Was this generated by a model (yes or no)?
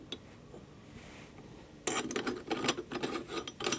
no